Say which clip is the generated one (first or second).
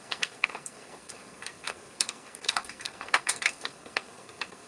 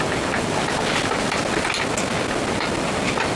first